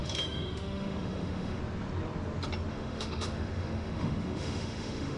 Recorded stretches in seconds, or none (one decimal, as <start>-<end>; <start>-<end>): 1.6-2.7